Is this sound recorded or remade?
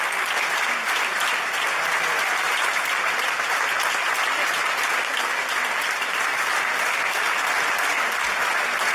recorded